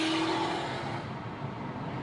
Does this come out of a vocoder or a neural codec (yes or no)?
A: no